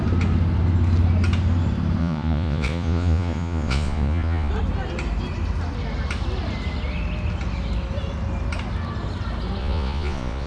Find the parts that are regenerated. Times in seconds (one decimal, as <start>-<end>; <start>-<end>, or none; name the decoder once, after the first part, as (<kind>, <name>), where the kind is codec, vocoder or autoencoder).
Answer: 2.0-4.5 (vocoder, Vocos); 9.6-10.5